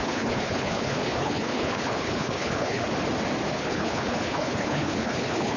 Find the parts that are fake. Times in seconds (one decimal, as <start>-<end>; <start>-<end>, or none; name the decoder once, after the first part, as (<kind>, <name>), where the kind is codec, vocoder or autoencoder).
0.0-2.8 (codec, HILCodec); 3.5-5.6